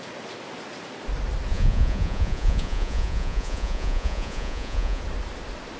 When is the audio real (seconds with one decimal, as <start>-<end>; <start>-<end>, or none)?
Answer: 0.0-1.5; 5.0-5.8